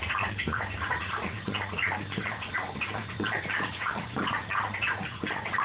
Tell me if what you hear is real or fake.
fake